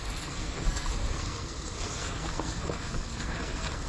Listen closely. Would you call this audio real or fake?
fake